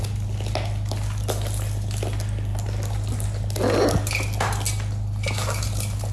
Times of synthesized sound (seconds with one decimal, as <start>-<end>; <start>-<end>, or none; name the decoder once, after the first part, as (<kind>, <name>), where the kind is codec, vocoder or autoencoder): none